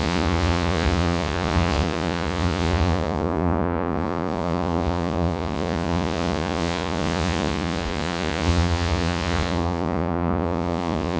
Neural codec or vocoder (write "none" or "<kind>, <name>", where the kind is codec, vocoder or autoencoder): vocoder, Vocos